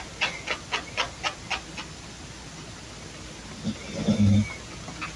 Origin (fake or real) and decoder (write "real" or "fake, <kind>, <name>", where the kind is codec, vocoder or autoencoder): real